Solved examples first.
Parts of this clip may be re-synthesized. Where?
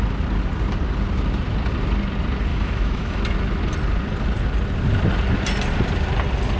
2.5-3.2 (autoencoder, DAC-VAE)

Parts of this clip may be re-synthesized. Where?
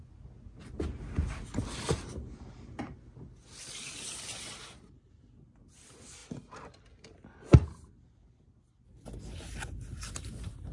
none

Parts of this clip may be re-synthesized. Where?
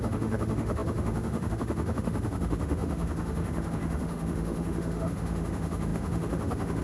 0.0-6.8 (autoencoder, DAC-VAE)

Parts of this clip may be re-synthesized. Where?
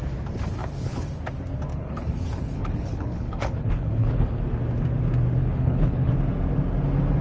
0.6-1.2 (codec, HILCodec); 1.7-4.4; 5.4-6.1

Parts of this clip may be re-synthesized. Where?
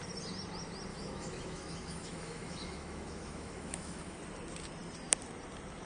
0.9-4.2 (autoencoder, DAC-VAE)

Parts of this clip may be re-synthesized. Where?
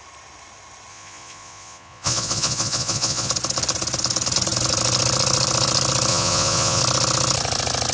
0.9-3.3 (vocoder, Vocos); 6.1-6.8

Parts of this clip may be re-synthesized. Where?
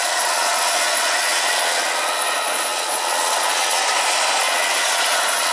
0.0-3.8 (vocoder, Vocos); 4.4-5.5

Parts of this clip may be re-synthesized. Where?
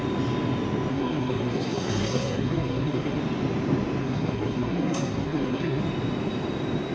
0.9-3.2 (codec, SNAC); 4.0-5.8